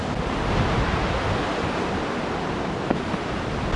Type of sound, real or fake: real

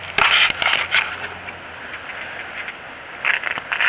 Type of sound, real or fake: real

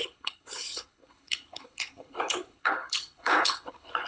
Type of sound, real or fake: fake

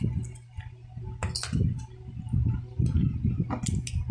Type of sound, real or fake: real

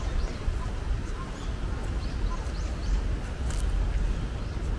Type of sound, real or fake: real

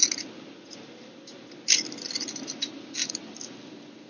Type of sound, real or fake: real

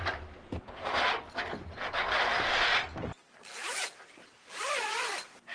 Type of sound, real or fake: real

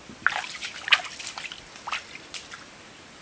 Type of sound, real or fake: real